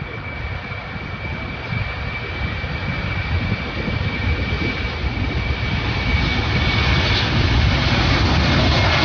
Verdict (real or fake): real